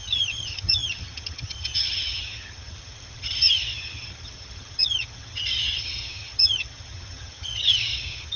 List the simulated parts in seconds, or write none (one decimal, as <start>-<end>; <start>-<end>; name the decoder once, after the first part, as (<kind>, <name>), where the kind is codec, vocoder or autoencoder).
0.0-8.4 (vocoder, HiFi-GAN)